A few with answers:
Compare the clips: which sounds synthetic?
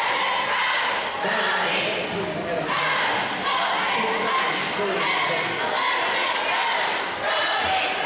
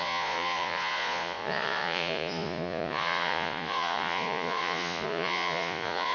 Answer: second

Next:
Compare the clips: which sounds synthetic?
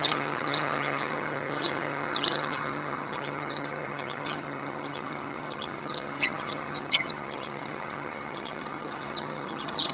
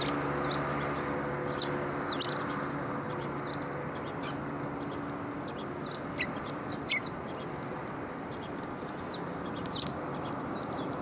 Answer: first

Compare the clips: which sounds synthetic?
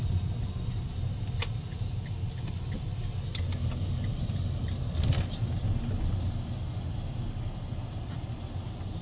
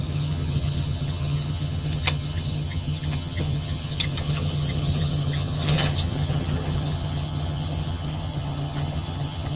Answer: second